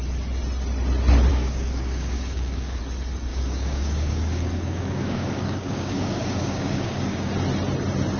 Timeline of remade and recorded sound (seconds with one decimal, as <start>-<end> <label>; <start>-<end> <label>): 0.0-1.3 recorded; 1.3-2.8 remade; 2.8-3.3 recorded; 3.3-7.3 remade; 7.3-8.2 recorded